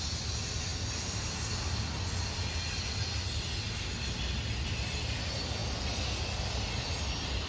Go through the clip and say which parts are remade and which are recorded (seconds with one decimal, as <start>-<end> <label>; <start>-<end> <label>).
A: 0.0-7.5 recorded